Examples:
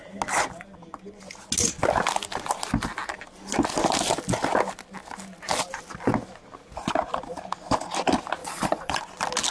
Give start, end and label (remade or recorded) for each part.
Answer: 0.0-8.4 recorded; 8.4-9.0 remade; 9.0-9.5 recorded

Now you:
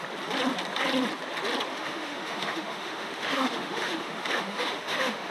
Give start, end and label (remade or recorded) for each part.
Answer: 0.0-1.7 recorded; 1.7-5.3 remade

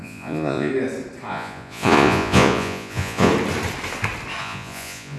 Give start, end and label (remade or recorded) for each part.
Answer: 0.0-0.7 remade; 0.7-1.3 recorded; 1.3-3.3 remade; 3.3-4.4 recorded; 4.4-5.2 remade